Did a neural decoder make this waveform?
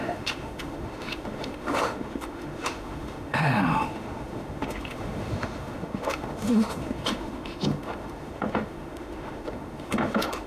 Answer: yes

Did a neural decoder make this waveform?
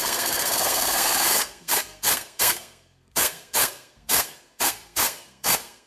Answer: yes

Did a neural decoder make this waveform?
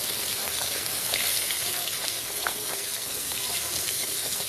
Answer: yes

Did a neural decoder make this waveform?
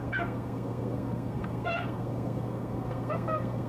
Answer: yes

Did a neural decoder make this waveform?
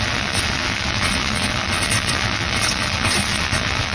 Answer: yes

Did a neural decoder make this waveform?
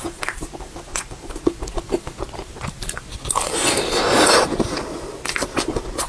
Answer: no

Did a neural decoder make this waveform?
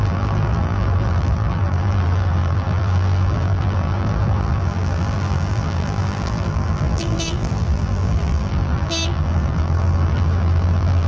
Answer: yes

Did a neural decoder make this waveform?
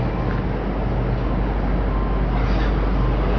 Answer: no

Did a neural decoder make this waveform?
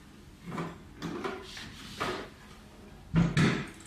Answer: no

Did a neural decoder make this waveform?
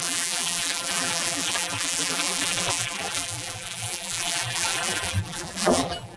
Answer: yes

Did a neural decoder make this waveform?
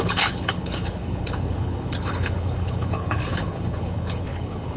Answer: yes